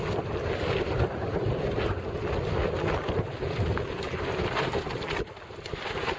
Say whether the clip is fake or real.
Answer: real